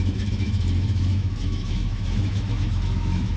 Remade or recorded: remade